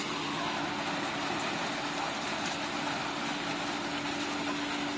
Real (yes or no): yes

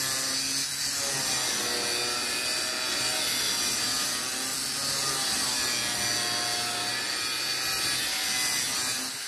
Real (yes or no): yes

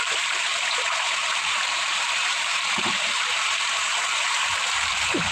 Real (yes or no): no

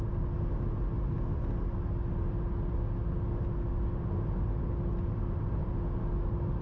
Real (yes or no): yes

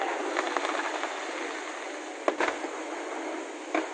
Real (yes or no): yes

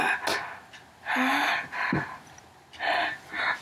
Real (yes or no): yes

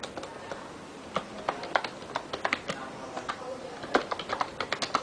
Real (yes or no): yes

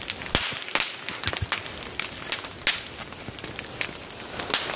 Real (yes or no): yes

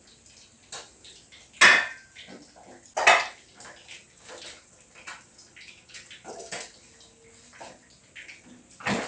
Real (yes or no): yes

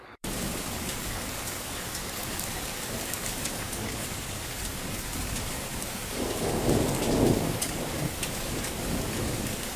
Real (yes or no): no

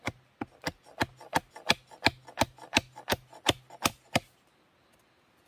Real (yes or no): yes